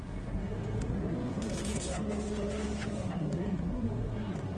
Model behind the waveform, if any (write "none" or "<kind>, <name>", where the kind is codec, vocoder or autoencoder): codec, SNAC